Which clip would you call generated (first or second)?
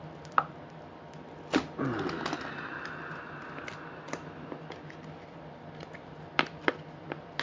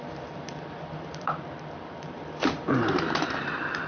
second